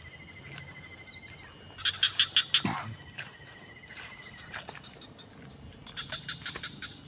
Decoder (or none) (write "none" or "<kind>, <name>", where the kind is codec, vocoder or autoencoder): none